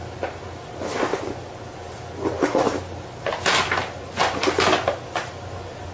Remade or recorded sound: recorded